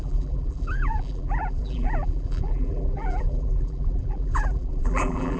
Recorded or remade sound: remade